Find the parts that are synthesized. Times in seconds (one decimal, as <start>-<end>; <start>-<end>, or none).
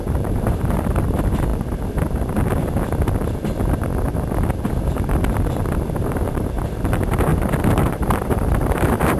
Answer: 0.0-1.5; 6.1-7.3; 7.8-9.2